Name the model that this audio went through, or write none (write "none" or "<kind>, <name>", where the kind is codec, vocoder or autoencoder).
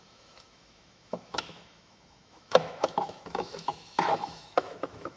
autoencoder, DAC-VAE